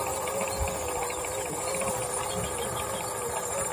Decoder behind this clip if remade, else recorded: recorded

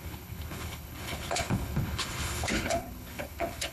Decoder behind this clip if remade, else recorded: remade, codec, HILCodec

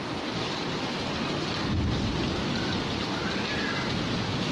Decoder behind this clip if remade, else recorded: recorded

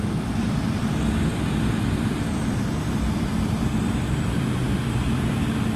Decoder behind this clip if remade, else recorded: remade, vocoder, BigVGAN v2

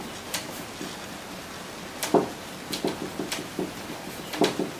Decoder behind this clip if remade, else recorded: recorded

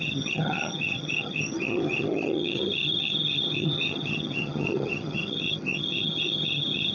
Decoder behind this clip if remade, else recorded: remade, vocoder, HiFi-GAN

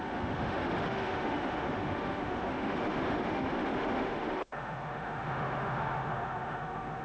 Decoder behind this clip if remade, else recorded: remade, autoencoder, DAC-VAE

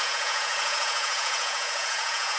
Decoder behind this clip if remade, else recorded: remade, vocoder, Vocos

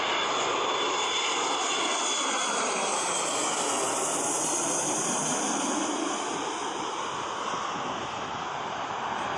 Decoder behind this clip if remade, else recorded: recorded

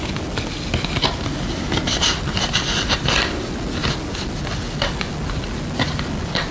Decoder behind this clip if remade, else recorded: recorded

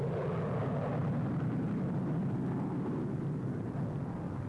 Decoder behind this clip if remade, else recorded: recorded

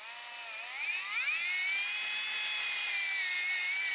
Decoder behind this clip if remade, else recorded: recorded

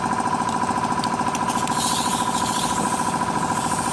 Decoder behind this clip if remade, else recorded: recorded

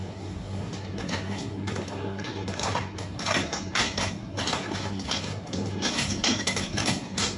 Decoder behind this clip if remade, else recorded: remade, codec, SNAC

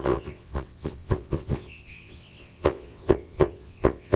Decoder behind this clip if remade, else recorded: remade, vocoder, WaveNeXt